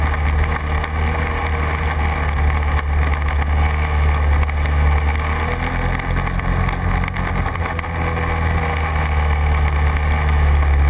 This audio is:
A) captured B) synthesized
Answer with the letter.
A